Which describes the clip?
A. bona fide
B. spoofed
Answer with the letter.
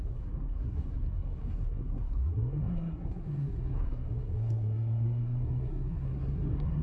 B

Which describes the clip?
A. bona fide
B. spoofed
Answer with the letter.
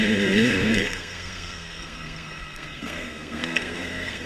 B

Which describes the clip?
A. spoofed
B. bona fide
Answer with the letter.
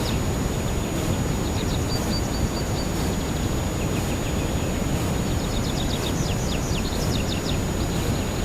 B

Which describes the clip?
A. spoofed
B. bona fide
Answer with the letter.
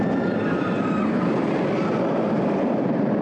A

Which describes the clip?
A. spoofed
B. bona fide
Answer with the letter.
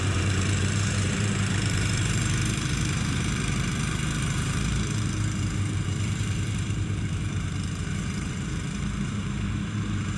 A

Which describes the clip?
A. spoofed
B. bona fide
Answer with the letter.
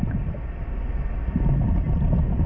B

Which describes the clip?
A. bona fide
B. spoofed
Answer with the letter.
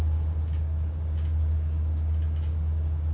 A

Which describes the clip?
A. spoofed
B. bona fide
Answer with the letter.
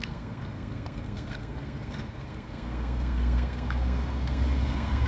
A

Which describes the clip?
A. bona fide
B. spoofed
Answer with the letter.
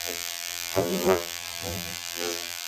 B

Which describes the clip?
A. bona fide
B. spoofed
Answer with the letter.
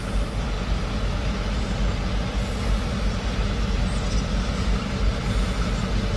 A